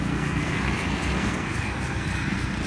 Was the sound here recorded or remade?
remade